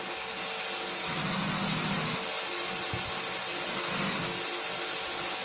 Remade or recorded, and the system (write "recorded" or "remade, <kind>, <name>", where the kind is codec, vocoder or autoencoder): recorded